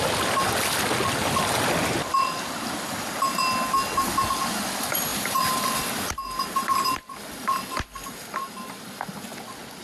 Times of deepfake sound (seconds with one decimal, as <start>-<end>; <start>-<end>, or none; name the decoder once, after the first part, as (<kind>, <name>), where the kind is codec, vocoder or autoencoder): 1.2-1.8 (vocoder, BigVGAN v2); 5.1-7.8